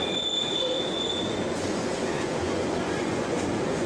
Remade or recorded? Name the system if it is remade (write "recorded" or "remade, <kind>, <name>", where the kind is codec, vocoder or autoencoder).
remade, vocoder, Vocos